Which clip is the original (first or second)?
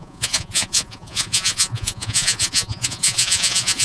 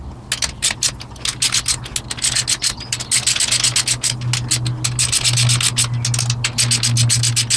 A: second